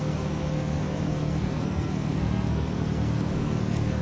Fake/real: fake